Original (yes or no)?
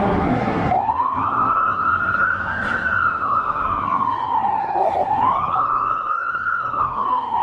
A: no